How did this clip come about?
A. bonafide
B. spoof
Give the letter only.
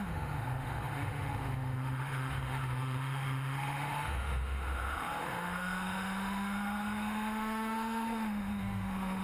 B